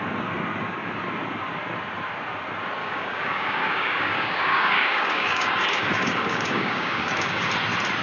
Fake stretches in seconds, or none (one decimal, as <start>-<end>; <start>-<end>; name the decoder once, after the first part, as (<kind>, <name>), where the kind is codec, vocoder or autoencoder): 2.8-7.5 (codec, DAC)